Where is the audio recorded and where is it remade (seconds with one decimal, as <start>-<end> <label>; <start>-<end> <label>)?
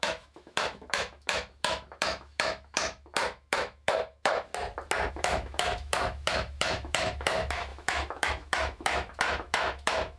0.0-4.5 remade; 4.5-5.1 recorded; 5.1-10.2 remade